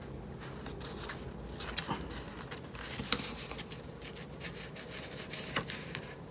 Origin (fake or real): real